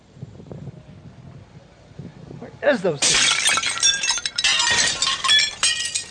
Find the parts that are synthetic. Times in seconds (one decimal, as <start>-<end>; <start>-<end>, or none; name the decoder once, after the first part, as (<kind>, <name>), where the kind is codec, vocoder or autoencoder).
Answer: 0.0-6.1 (vocoder, BigVGAN v2)